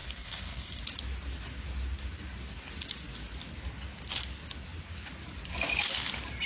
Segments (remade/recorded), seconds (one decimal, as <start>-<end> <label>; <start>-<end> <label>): 0.0-0.8 remade; 0.8-6.5 recorded